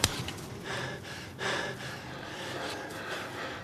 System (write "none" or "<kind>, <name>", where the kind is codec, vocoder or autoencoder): none